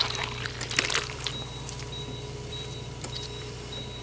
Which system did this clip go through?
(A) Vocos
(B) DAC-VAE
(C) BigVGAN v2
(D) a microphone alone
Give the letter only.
C